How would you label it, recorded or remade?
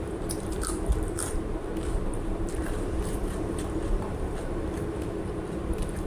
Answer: remade